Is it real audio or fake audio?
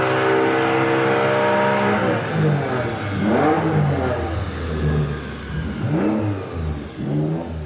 real